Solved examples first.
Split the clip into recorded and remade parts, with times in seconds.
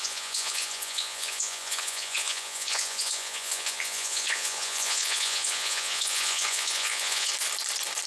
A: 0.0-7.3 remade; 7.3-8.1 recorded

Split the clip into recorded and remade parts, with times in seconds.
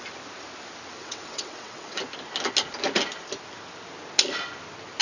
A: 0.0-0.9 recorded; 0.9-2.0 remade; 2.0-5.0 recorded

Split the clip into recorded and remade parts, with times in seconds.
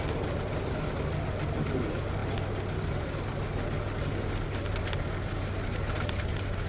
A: 0.0-6.7 recorded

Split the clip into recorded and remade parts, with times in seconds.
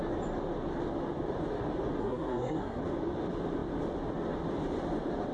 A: 0.0-2.0 recorded; 2.0-2.8 remade; 2.8-5.3 recorded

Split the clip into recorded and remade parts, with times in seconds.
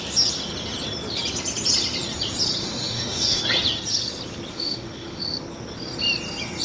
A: 0.0-2.6 recorded; 2.6-3.4 remade; 3.4-4.5 recorded; 4.5-5.2 remade; 5.2-6.6 recorded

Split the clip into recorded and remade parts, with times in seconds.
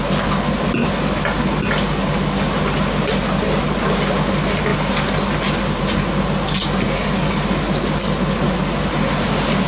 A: 0.0-9.7 recorded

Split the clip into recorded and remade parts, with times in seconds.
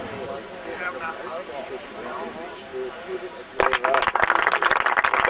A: 0.0-5.3 recorded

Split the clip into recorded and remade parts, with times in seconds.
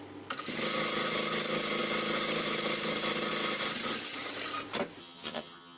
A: 0.0-5.0 recorded; 5.0-5.8 remade